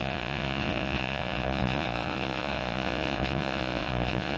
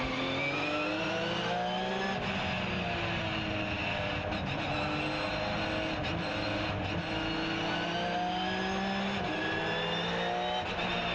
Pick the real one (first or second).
second